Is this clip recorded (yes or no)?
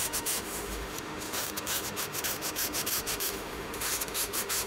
no